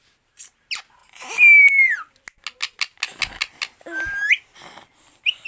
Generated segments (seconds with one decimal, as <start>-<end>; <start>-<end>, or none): none